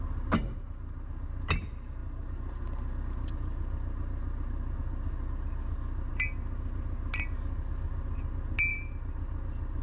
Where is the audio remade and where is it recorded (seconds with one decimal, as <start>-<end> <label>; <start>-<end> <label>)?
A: 0.0-2.0 recorded; 2.0-3.0 remade; 3.0-8.7 recorded; 8.7-9.8 remade